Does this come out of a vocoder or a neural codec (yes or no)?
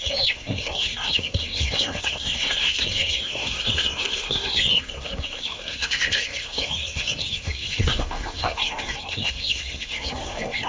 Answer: yes